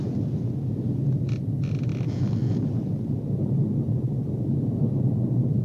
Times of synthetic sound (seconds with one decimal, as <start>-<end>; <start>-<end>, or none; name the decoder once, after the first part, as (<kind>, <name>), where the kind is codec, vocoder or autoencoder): none